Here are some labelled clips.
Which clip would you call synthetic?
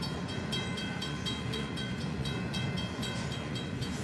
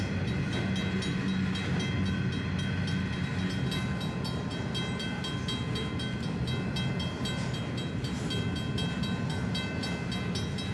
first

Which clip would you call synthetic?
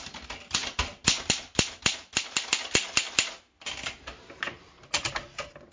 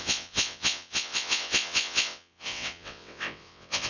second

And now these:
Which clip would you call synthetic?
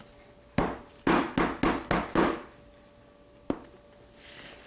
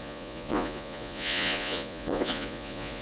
second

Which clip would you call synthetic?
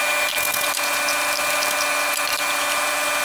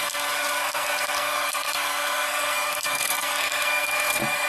second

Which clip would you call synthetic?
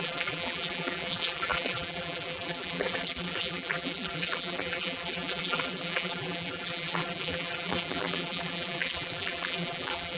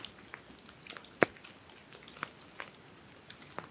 first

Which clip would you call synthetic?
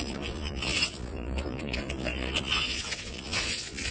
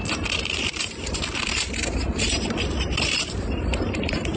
first